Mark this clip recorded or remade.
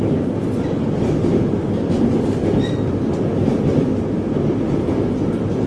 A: recorded